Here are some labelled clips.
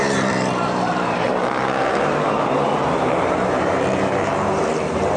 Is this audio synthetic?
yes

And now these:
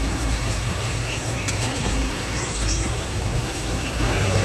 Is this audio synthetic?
yes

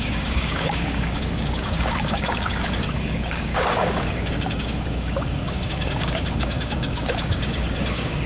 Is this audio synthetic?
yes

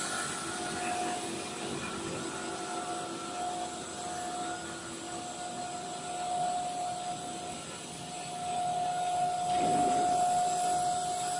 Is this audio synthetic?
no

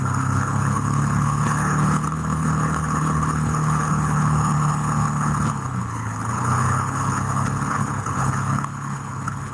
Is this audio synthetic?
yes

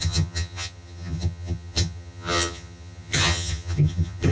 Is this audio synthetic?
yes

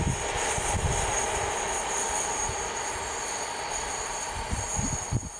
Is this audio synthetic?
no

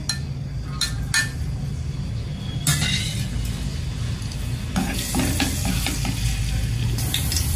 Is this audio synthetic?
no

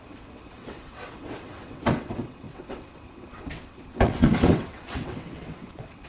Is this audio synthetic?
yes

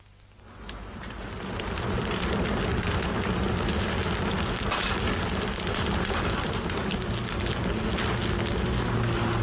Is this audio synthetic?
no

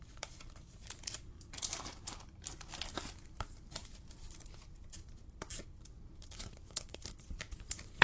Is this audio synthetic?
yes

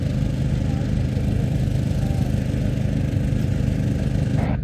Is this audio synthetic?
no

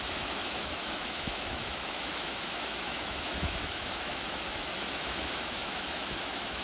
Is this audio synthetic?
yes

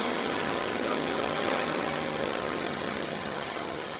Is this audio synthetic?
yes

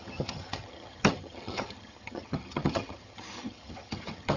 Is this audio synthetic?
yes